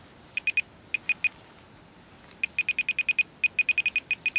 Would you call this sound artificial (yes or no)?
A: no